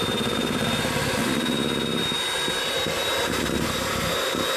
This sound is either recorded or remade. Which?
recorded